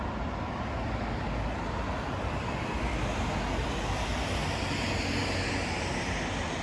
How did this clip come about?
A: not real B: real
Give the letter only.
B